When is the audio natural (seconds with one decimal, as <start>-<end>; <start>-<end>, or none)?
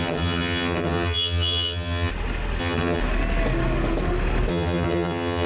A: 2.1-2.6; 3.0-4.5